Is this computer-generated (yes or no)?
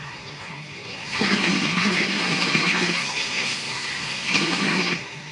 yes